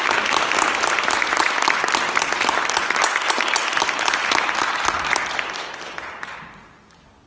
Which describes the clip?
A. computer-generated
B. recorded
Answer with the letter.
B